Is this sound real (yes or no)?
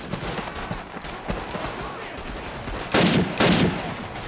yes